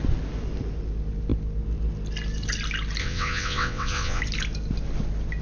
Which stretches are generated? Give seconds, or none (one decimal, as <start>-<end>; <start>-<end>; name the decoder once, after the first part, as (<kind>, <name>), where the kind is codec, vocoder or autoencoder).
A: 3.0-4.2 (vocoder, WaveNeXt)